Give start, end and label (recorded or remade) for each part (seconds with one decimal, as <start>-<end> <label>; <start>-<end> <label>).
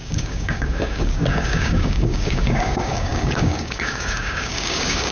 0.0-5.1 remade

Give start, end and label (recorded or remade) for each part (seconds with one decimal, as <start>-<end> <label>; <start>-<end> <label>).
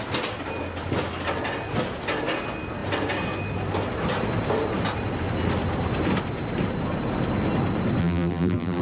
0.0-8.0 recorded; 8.0-8.8 remade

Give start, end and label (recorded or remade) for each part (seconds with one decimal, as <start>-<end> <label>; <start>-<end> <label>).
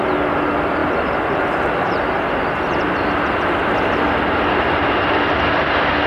0.0-6.1 recorded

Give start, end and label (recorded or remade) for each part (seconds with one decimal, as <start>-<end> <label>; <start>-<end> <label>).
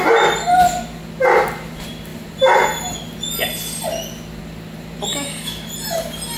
0.0-5.1 recorded; 5.1-5.7 remade; 5.7-6.4 recorded